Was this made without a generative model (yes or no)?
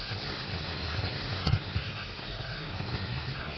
no